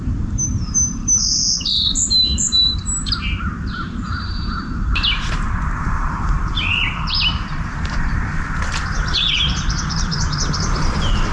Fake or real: fake